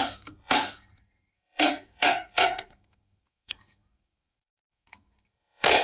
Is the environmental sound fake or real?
fake